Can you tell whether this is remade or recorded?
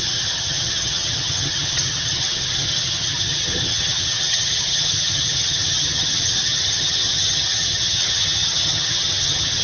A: remade